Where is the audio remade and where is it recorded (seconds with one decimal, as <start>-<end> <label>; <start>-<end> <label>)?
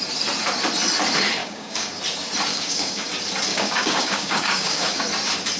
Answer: 0.0-1.4 recorded; 1.4-2.0 remade; 2.0-2.5 recorded; 2.5-3.1 remade; 3.1-3.5 recorded; 3.5-5.0 remade; 5.0-5.6 recorded